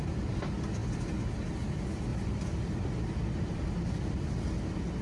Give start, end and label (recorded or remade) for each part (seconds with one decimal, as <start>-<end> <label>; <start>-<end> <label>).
0.0-2.1 recorded; 2.1-4.6 remade; 4.6-5.0 recorded